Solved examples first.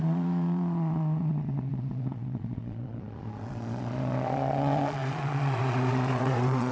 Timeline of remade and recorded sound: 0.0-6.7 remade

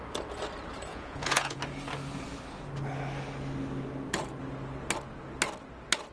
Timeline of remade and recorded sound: 0.0-0.9 recorded; 0.9-1.6 remade; 1.6-6.1 recorded

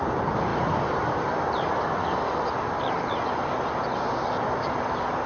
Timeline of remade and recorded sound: 0.0-5.3 recorded

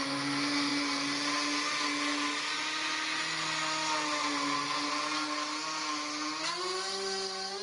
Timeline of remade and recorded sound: 0.0-7.6 recorded

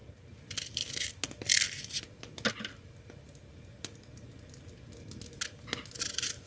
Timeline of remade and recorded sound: 0.0-6.5 recorded